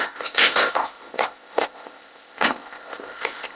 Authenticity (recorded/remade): remade